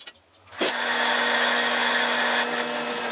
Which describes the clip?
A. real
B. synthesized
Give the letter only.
A